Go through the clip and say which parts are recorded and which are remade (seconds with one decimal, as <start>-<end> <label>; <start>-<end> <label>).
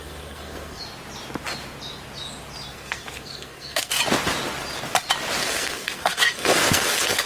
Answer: 0.0-0.8 remade; 0.8-2.7 recorded; 2.7-4.0 remade; 4.0-5.4 recorded; 5.4-7.3 remade